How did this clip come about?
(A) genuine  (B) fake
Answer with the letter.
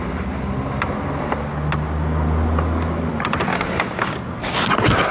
A